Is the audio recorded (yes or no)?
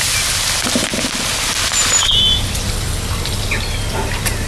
yes